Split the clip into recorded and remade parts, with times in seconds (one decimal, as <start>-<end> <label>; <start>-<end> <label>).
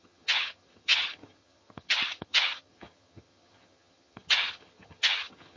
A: 0.0-5.6 remade